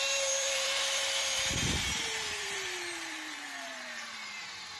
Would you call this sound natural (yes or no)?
no